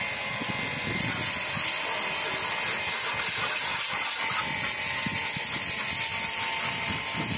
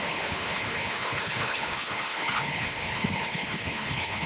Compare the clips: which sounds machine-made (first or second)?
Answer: second